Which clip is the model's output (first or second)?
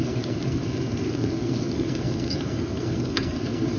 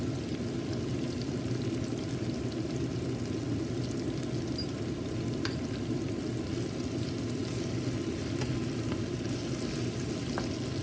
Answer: first